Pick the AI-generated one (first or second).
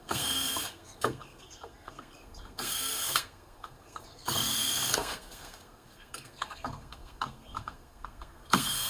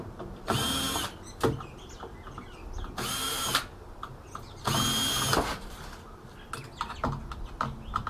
first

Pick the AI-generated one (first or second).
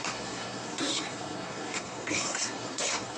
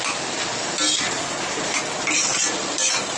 first